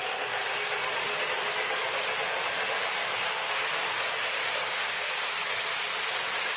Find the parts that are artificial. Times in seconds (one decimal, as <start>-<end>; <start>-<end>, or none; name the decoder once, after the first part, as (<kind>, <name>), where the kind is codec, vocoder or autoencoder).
3.0-5.6 (codec, DAC)